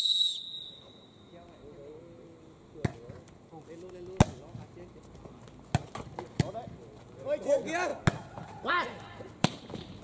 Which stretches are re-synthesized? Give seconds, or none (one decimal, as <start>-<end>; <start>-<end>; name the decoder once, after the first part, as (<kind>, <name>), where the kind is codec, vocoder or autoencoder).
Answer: none